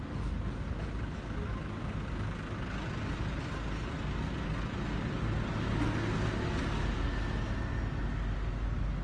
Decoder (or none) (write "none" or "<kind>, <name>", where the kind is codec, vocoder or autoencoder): none